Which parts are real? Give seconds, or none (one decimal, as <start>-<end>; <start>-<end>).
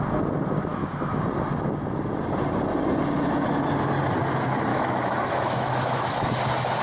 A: 0.0-0.7; 1.2-4.7; 6.3-6.8